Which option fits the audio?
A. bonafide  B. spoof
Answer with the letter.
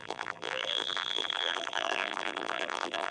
B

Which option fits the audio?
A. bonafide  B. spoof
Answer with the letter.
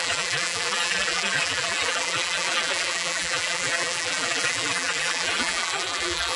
B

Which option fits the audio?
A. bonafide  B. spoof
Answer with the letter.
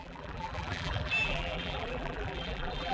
B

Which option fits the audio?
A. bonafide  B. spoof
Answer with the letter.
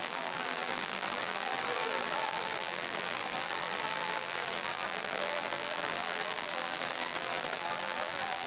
B